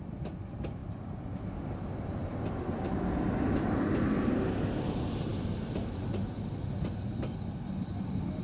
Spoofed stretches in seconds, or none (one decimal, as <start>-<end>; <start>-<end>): none